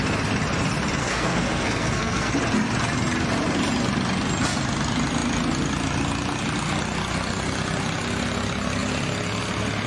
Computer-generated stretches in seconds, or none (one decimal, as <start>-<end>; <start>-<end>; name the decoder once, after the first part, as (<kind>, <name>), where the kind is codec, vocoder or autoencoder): 1.0-2.3 (codec, SNAC)